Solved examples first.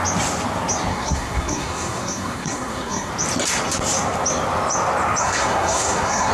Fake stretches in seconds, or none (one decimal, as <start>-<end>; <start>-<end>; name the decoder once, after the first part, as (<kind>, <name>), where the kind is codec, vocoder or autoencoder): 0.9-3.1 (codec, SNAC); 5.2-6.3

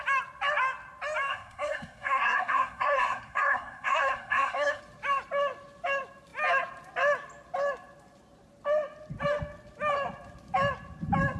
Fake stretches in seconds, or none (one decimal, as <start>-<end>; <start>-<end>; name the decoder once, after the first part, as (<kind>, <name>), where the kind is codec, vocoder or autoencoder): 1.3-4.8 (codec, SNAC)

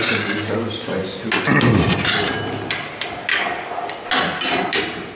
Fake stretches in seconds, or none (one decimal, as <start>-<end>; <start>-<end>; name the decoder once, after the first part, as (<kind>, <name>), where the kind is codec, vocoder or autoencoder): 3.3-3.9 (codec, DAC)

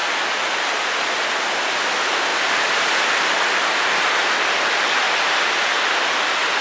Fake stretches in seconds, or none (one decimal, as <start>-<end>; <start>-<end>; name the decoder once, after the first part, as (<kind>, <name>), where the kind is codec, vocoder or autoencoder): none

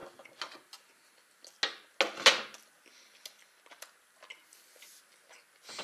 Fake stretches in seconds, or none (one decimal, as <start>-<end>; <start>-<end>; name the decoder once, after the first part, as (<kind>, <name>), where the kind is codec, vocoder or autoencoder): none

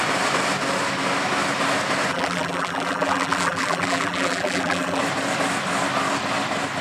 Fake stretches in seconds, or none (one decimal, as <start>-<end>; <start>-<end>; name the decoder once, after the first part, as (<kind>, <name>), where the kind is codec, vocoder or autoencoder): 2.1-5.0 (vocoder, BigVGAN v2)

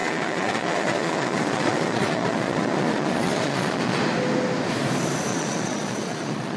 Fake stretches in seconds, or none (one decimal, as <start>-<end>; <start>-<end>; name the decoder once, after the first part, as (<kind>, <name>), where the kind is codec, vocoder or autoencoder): 0.0-4.0 (vocoder, Vocos); 5.3-6.6